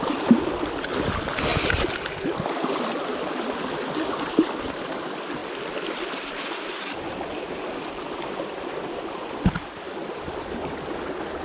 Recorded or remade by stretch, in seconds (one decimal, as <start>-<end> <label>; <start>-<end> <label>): 0.0-11.4 recorded

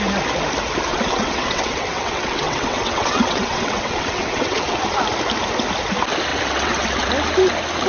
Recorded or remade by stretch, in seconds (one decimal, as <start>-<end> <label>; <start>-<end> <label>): 0.0-0.9 recorded; 0.9-4.8 remade; 4.8-6.3 recorded; 6.3-7.1 remade; 7.1-7.9 recorded